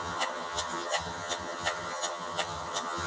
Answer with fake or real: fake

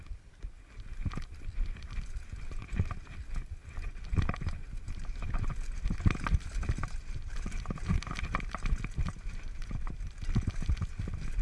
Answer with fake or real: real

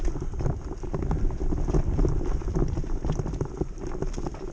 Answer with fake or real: real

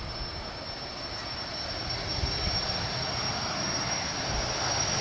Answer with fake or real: real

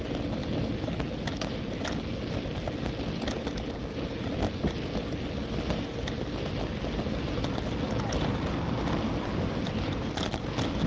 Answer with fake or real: real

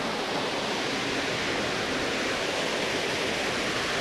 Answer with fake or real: real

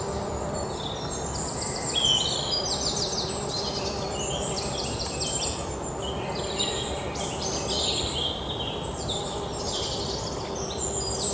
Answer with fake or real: real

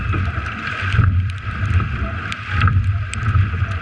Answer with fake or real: fake